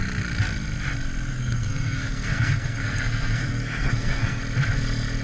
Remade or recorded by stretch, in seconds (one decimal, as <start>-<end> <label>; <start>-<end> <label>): 0.0-1.3 recorded; 1.3-4.4 remade; 4.4-5.2 recorded